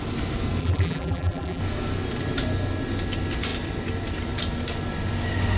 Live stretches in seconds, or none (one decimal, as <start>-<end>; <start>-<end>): 0.0-0.6; 1.6-5.6